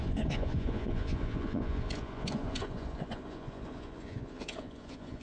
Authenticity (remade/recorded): remade